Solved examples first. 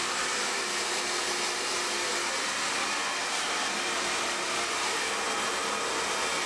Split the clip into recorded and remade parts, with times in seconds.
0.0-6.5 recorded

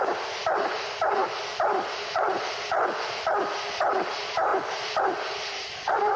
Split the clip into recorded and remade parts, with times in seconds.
0.0-0.4 recorded; 0.4-4.1 remade; 4.1-4.5 recorded; 4.5-5.0 remade; 5.0-6.2 recorded